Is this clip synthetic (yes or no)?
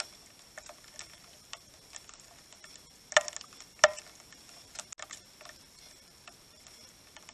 no